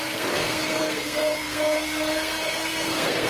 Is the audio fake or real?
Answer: fake